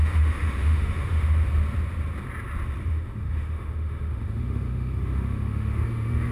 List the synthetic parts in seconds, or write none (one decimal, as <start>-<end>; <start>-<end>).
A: 0.0-1.5; 2.9-6.3